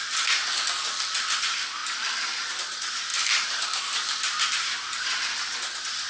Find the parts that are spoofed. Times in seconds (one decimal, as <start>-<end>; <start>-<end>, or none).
3.1-5.2